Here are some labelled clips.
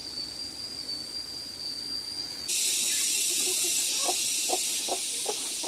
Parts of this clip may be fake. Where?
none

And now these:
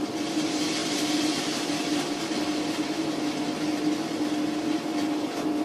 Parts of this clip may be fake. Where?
0.8-2.2